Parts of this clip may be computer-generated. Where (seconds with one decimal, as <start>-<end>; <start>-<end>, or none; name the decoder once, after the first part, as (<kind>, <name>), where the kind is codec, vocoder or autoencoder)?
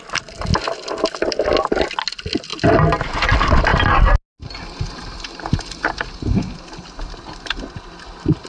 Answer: none